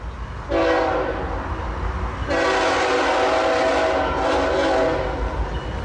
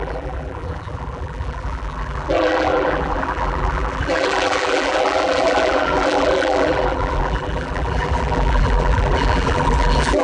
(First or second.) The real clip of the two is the first